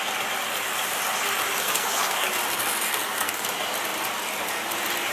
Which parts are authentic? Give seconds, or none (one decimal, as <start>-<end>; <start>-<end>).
0.0-1.6; 2.3-2.9; 3.5-5.1